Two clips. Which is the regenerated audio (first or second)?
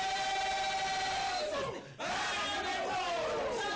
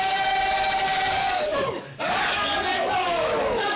second